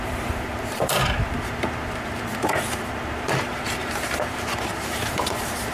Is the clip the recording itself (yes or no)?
no